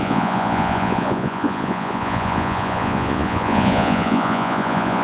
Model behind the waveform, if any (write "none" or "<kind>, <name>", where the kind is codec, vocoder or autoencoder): vocoder, Vocos